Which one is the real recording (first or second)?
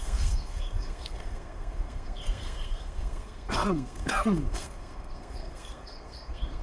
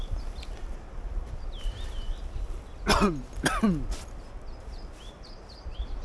second